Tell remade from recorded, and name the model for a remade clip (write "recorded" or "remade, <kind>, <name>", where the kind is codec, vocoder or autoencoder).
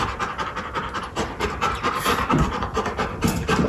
recorded